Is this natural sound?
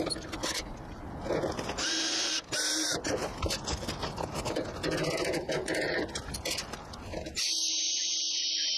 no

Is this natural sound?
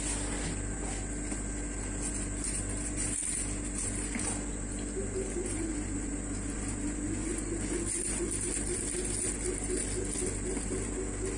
yes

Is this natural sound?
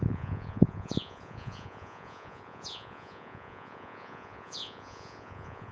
no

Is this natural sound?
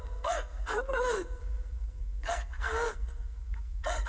no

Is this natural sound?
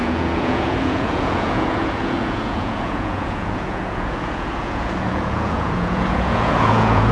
no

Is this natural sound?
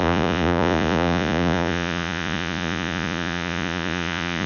no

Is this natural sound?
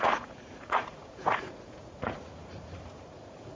no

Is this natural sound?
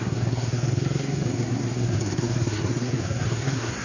no